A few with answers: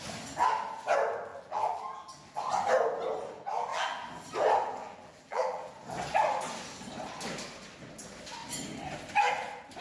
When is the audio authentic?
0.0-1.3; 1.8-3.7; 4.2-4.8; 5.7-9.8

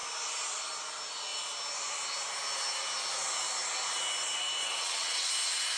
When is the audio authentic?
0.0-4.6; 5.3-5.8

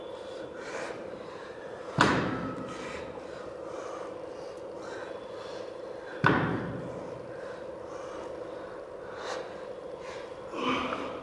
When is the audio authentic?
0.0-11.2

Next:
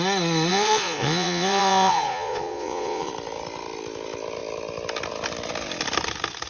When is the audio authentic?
0.0-0.5; 3.1-6.5

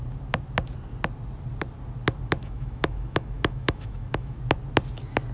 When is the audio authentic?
0.0-2.4; 4.4-5.3